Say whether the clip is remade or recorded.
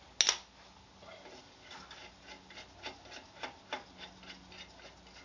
recorded